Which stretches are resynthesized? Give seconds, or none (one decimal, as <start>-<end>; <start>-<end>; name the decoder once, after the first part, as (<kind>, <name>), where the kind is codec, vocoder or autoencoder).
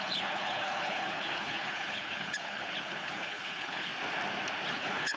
0.0-3.9 (codec, HILCodec); 4.7-5.2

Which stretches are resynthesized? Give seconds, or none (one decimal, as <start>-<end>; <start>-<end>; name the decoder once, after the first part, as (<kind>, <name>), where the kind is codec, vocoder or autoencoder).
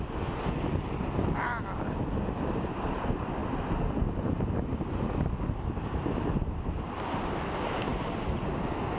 none